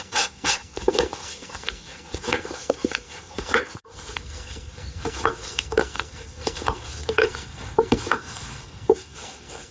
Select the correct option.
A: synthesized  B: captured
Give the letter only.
A